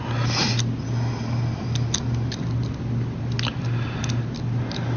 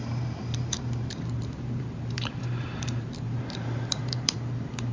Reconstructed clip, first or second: second